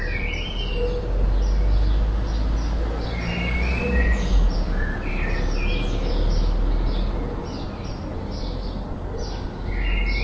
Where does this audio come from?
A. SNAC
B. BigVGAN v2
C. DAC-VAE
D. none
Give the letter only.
D